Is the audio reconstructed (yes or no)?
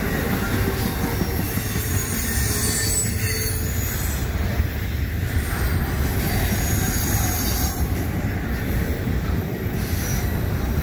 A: no